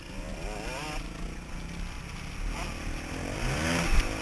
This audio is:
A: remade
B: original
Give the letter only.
B